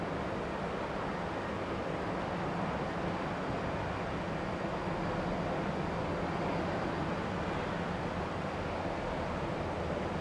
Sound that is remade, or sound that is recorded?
recorded